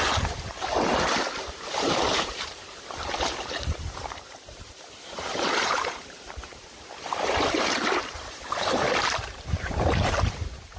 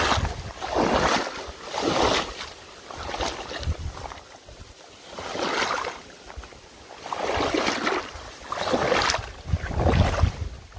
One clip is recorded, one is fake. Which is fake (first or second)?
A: first